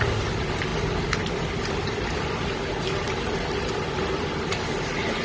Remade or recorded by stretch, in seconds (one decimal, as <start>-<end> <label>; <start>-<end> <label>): 0.0-5.2 recorded